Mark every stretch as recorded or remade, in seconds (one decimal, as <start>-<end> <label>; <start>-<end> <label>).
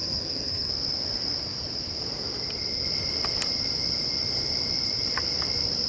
0.0-0.7 remade; 0.7-5.9 recorded